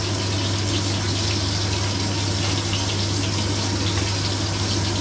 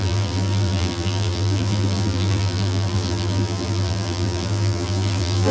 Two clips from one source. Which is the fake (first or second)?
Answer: second